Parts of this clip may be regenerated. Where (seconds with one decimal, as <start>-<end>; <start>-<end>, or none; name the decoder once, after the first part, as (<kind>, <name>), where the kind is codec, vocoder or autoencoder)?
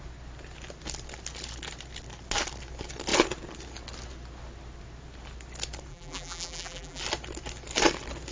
5.9-7.0 (vocoder, BigVGAN v2)